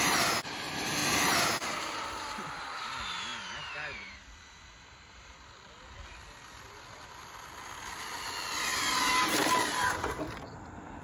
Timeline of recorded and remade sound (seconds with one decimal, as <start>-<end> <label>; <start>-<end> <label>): 0.0-1.0 recorded; 1.0-2.8 remade; 2.8-8.7 recorded; 8.7-10.2 remade; 10.2-11.0 recorded